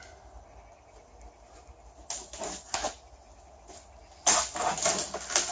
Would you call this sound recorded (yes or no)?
yes